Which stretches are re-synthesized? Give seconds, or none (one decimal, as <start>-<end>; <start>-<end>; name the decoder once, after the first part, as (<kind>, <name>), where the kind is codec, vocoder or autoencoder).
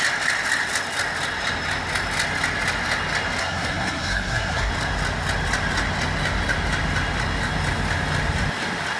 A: 3.4-4.7 (codec, SNAC)